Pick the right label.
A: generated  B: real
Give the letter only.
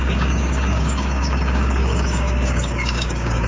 A